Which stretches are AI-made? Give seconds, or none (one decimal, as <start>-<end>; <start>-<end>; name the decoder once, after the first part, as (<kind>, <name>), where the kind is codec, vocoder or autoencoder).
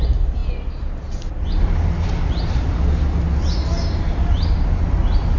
none